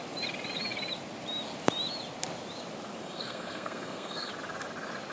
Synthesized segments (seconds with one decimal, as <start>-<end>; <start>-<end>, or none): 3.0-4.3